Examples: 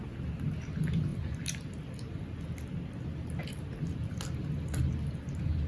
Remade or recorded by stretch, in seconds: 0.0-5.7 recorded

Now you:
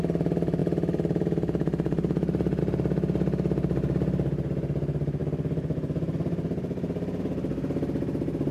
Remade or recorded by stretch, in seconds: 0.0-0.6 recorded; 0.6-2.6 remade; 2.6-8.5 recorded

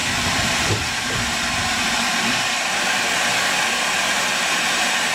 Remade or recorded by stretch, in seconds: 0.0-1.8 remade; 1.8-5.1 recorded

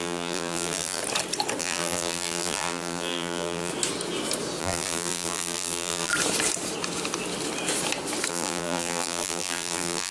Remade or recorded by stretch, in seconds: 0.0-1.0 remade; 1.0-1.6 recorded; 1.6-3.7 remade; 3.7-4.6 recorded; 4.6-6.1 remade; 6.1-8.3 recorded; 8.3-10.1 remade

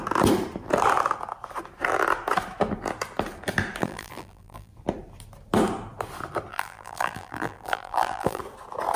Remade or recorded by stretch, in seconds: 0.0-3.8 recorded; 3.8-4.7 remade; 4.7-6.5 recorded; 6.5-8.4 remade; 8.4-9.0 recorded